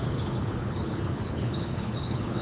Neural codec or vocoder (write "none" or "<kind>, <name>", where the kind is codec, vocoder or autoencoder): codec, HILCodec